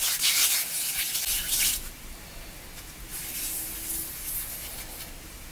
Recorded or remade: recorded